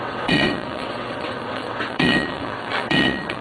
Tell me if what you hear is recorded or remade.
remade